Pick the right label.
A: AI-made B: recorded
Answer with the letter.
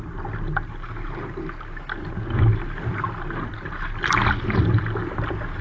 B